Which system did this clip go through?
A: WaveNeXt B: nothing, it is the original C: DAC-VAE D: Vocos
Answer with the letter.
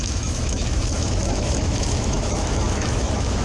C